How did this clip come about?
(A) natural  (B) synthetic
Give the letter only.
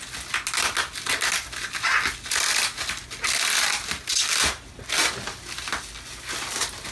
A